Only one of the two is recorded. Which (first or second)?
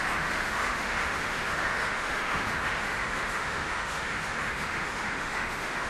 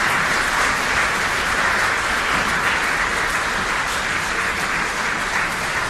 second